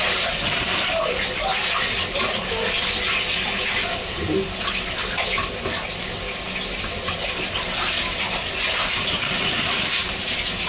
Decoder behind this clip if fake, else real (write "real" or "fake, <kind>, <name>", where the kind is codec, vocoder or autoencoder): real